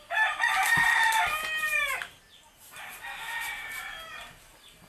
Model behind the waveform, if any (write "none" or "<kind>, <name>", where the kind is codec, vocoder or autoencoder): none